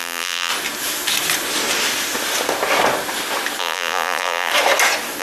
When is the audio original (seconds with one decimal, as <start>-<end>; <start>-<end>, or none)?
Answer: 0.5-3.6; 4.5-5.2